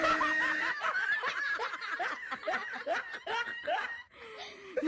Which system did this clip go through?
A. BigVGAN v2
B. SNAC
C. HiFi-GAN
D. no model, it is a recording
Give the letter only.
A